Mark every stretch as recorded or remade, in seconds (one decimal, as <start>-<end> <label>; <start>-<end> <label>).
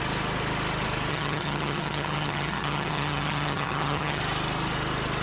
0.0-1.1 recorded; 1.1-4.2 remade; 4.2-5.2 recorded